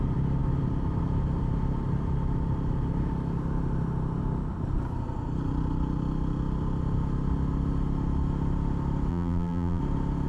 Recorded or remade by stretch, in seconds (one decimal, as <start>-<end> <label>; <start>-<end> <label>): 0.0-9.1 recorded; 9.1-9.8 remade; 9.8-10.3 recorded